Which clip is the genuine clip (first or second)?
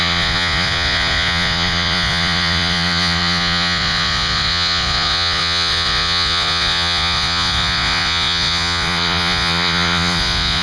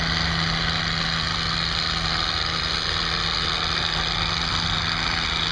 second